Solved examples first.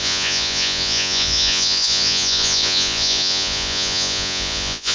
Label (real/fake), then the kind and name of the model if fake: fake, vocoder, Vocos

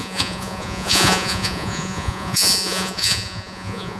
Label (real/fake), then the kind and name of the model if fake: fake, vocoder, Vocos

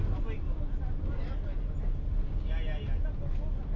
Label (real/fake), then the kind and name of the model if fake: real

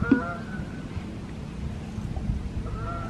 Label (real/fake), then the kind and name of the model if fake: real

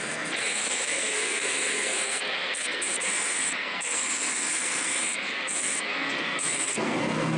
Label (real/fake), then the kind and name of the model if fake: fake, codec, SNAC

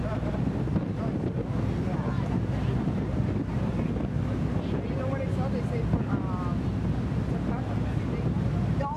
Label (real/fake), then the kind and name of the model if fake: real